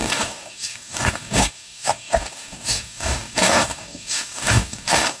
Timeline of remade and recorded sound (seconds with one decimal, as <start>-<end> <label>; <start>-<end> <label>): 0.0-5.2 remade